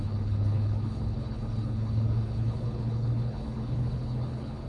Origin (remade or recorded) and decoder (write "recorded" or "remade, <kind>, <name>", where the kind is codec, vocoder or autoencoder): remade, codec, HILCodec